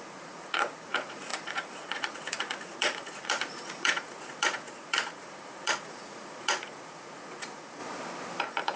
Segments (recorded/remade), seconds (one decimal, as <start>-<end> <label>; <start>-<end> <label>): 0.0-7.8 remade; 7.8-8.4 recorded; 8.4-8.8 remade